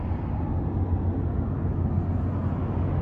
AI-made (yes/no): no